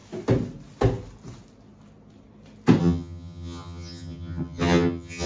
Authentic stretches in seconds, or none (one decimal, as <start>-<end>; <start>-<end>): 0.0-2.8